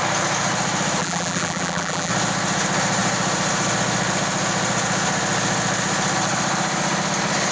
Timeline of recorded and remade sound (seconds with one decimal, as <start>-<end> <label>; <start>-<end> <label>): 0.0-1.0 recorded; 1.0-2.1 remade; 2.1-7.5 recorded